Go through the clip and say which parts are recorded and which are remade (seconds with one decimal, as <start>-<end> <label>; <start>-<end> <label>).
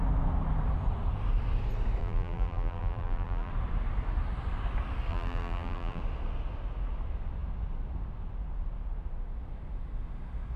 0.0-2.0 recorded; 2.0-3.5 remade; 3.5-5.1 recorded; 5.1-6.0 remade; 6.0-10.6 recorded